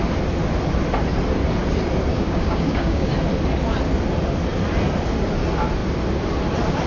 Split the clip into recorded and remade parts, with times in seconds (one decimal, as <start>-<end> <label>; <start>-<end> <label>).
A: 0.0-2.1 recorded; 2.1-3.1 remade; 3.1-6.9 recorded